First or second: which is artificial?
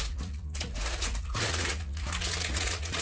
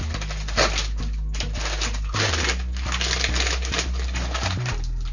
first